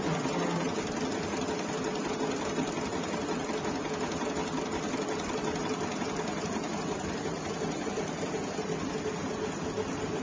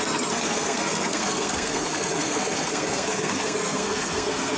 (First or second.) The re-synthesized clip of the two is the second